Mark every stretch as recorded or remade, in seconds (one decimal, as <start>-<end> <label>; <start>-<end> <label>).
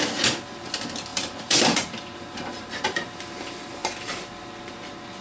0.0-1.1 recorded; 1.1-4.2 remade; 4.2-5.2 recorded